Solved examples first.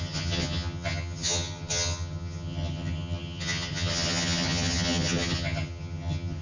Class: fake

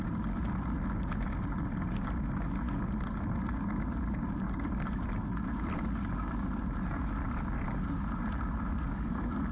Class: real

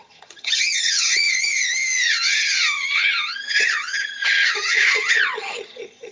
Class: fake